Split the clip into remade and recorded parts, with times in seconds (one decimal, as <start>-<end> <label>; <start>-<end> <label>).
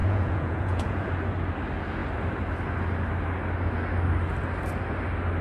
0.0-1.1 remade; 1.1-5.4 recorded